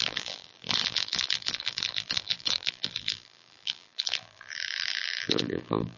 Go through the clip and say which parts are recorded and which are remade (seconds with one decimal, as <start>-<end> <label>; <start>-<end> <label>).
0.0-6.0 remade